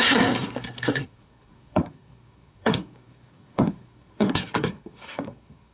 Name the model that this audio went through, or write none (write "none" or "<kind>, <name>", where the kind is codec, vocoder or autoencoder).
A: codec, SNAC